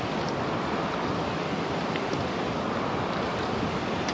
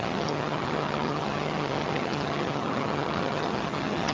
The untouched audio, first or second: first